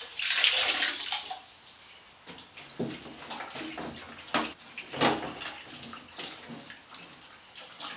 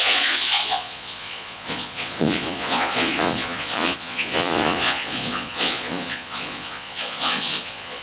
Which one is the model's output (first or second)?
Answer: second